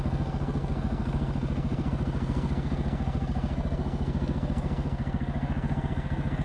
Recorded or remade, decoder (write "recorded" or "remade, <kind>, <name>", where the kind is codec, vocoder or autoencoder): remade, codec, SNAC